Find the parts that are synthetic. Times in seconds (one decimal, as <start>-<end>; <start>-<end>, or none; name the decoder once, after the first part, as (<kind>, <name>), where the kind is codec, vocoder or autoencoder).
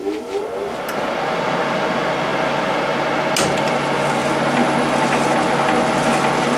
none